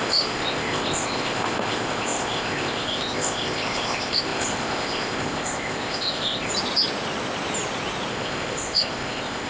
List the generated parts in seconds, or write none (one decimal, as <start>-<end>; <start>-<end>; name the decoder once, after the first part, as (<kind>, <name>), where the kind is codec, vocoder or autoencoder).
0.0-6.5 (codec, ZipCodec); 8.1-9.5